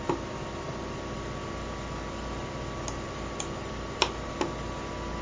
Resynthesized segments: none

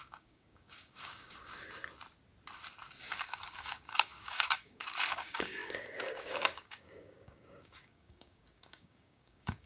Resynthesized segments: 0.0-1.5 (codec, DAC); 3.0-9.7